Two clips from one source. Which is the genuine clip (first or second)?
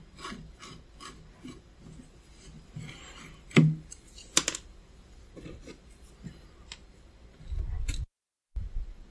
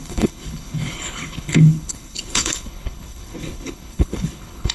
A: first